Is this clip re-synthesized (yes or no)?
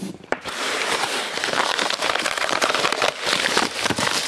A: yes